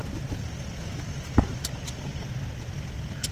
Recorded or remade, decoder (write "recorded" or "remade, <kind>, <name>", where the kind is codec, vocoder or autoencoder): recorded